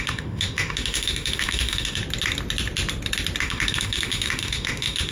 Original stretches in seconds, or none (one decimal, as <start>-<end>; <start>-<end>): 2.0-3.4